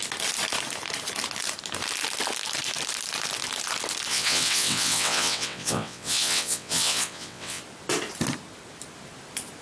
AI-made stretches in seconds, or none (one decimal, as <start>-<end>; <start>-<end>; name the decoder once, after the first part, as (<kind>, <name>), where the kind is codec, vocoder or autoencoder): 4.1-7.6 (vocoder, WaveNeXt)